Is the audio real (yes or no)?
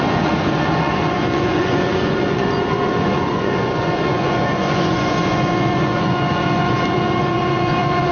no